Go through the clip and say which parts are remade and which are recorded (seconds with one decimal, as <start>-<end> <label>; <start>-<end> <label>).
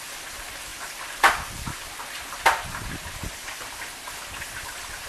0.0-0.7 recorded; 0.7-3.8 remade; 3.8-5.1 recorded